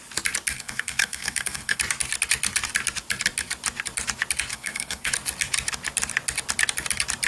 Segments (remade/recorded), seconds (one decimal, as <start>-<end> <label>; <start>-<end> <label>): 0.0-0.5 recorded; 0.5-1.8 remade; 1.8-4.5 recorded; 4.5-5.1 remade; 5.1-7.3 recorded